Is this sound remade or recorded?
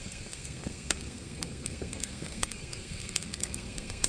remade